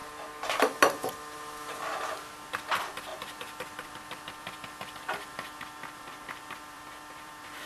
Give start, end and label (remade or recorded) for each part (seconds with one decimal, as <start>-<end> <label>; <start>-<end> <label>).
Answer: 0.0-3.1 recorded; 3.1-7.3 remade; 7.3-7.7 recorded